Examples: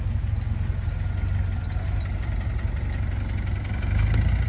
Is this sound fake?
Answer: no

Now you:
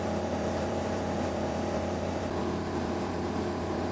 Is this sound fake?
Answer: yes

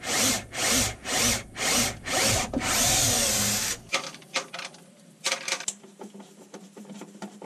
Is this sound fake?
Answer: yes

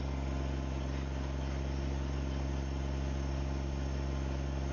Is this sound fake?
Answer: no